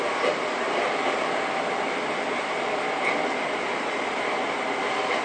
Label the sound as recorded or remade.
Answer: recorded